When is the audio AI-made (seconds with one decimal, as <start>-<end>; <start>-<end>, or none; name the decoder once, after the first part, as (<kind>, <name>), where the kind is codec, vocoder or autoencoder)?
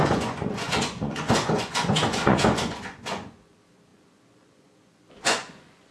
0.0-5.9 (vocoder, Vocos)